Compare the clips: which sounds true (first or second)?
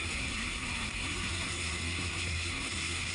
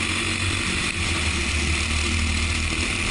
second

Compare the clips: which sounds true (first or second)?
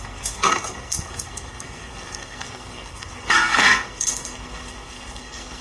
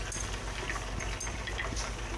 second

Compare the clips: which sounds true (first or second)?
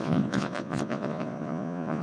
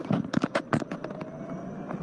second